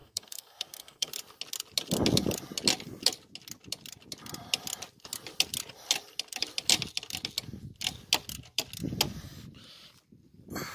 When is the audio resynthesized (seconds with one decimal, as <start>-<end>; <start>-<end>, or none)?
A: 0.0-1.1